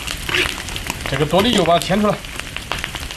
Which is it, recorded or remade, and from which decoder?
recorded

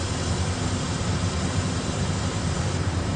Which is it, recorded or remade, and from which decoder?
recorded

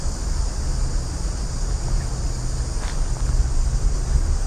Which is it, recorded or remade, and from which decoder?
recorded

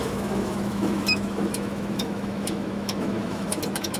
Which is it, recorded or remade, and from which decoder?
remade, autoencoder, DAC-VAE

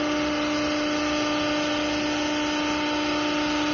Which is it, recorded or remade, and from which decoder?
recorded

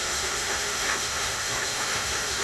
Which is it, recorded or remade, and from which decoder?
remade, autoencoder, DAC-VAE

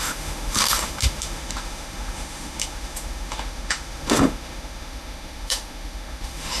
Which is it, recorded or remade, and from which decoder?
remade, autoencoder, DAC-VAE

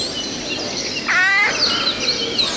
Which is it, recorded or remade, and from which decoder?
recorded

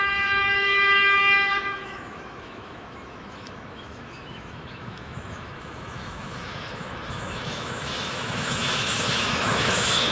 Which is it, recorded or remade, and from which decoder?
remade, autoencoder, DAC-VAE